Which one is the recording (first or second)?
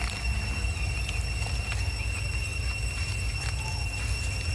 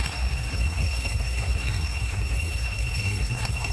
first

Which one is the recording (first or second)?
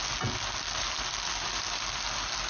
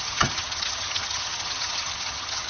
first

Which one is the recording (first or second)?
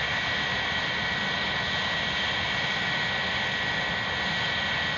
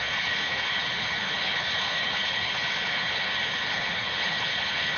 first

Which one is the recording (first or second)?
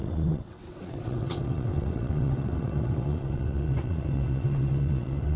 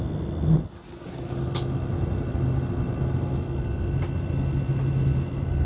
second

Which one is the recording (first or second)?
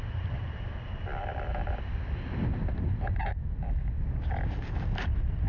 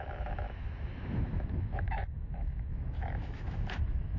first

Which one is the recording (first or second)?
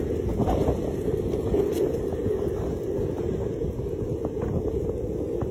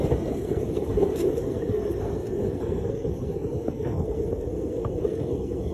first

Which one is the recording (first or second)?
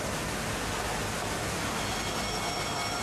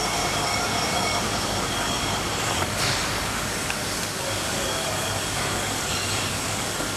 first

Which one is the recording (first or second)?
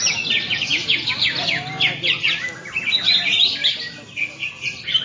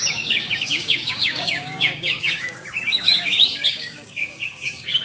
first